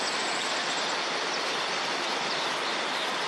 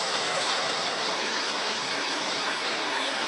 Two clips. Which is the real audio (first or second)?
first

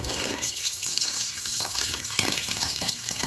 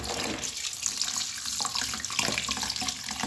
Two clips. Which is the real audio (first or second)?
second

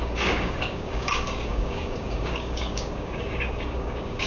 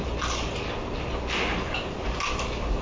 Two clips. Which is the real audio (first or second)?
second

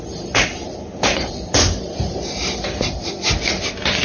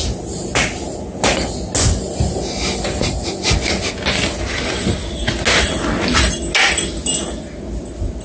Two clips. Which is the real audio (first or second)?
second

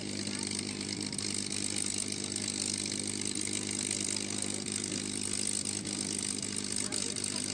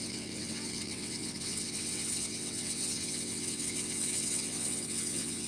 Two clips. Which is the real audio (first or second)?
first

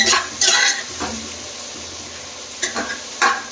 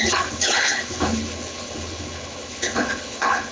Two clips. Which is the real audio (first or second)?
first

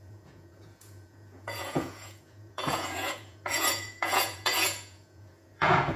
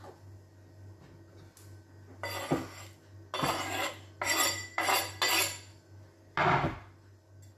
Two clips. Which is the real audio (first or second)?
second